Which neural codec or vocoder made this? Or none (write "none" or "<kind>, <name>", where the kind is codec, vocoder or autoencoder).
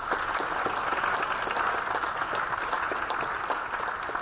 none